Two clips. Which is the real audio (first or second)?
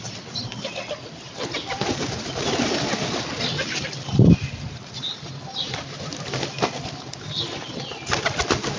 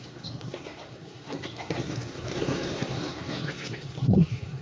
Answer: first